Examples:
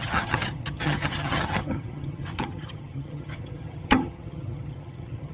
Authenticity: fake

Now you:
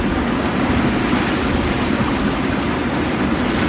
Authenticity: real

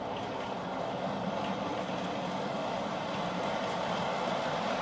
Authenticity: real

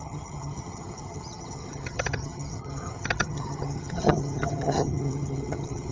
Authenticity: fake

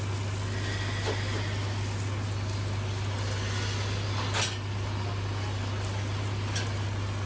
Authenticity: real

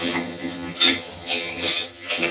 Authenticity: fake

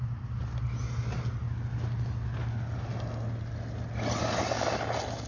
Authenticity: real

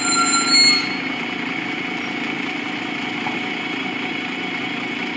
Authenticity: real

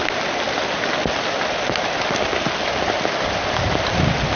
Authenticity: real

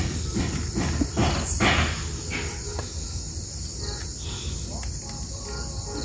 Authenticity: real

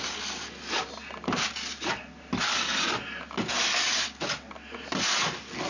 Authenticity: real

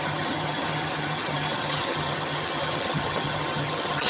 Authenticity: fake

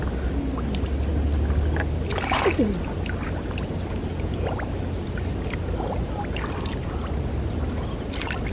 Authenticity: real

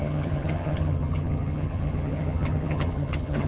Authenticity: fake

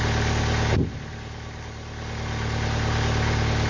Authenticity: real